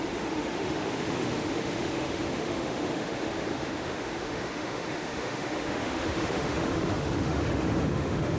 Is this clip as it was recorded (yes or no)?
no